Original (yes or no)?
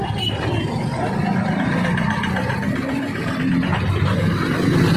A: no